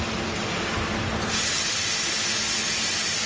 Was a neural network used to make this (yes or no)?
no